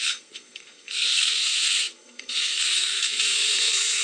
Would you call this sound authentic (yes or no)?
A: no